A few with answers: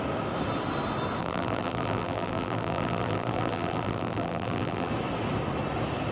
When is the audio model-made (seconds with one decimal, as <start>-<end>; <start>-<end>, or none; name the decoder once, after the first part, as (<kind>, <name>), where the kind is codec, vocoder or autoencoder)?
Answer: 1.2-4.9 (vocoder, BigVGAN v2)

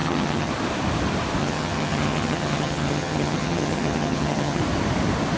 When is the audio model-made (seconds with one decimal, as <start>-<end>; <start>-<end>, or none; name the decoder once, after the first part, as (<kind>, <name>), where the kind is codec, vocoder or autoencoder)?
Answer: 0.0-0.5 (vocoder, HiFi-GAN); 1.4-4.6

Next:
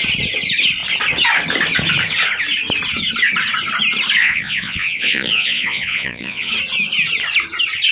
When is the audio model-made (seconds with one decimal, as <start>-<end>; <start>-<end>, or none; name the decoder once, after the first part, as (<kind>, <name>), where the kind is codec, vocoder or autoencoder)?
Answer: 4.2-6.5 (vocoder, Vocos)